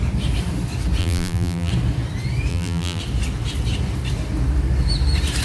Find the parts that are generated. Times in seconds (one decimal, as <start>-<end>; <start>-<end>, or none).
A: 1.0-1.7; 2.5-3.0